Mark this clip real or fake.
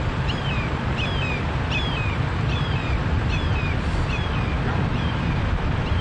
fake